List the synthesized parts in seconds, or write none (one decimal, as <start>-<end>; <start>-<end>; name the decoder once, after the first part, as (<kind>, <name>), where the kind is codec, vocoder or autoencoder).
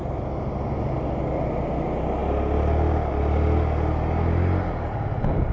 none